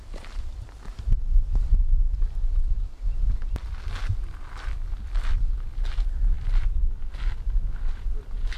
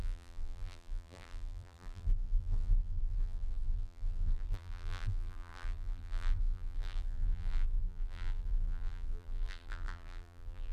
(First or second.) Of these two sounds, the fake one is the second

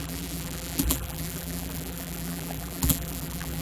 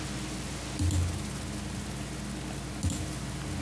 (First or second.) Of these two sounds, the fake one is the first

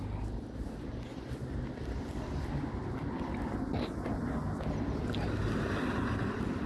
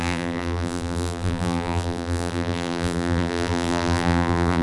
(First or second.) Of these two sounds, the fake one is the second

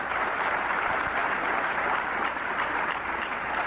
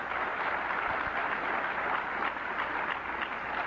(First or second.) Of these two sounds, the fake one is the first